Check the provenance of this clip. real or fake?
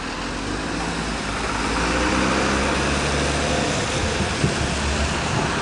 real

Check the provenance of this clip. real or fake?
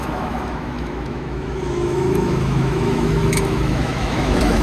fake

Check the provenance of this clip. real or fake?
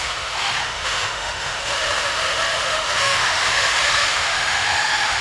fake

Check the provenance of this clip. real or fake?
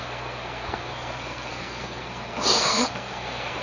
fake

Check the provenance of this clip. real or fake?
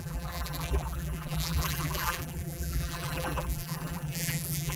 fake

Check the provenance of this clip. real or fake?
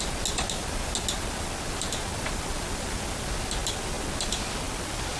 real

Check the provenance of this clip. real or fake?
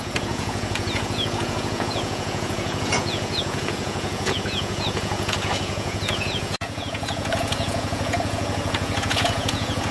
fake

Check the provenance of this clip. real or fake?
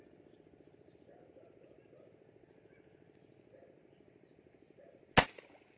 real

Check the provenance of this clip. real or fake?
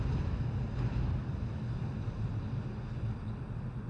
real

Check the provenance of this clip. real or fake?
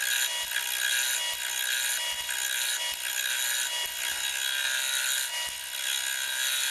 real